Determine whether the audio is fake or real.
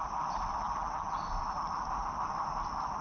real